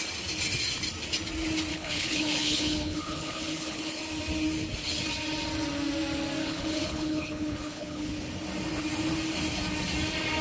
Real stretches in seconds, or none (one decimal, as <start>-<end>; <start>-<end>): 0.0-1.7; 4.0-6.4; 8.1-10.4